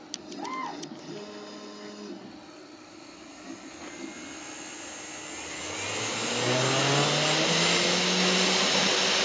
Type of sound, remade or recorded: recorded